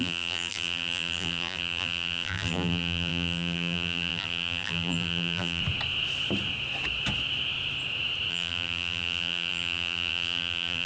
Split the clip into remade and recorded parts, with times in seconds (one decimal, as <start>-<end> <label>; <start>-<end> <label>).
0.0-5.6 remade; 5.6-8.3 recorded; 8.3-10.9 remade